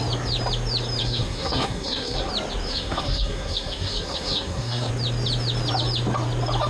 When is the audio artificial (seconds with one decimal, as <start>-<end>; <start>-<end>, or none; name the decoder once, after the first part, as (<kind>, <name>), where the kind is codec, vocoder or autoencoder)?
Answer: 1.0-2.3 (codec, SNAC); 2.7-4.9